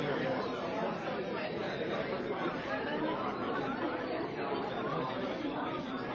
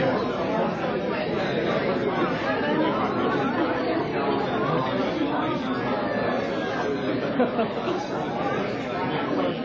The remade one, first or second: first